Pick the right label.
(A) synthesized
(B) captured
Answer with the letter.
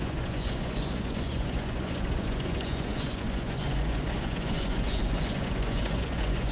A